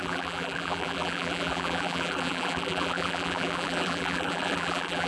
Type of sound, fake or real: fake